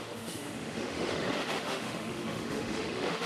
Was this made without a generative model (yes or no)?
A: no